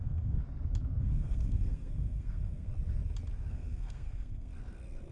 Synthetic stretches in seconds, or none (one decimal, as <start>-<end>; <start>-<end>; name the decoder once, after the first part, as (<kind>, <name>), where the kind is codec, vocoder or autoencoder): 0.0-0.4 (codec, SNAC); 1.0-2.7; 3.5-4.5